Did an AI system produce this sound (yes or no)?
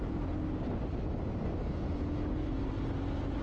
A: no